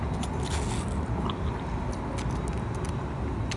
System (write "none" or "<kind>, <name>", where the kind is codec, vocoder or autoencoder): none